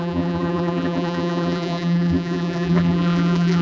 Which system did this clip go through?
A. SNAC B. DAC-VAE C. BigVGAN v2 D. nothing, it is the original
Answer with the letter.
C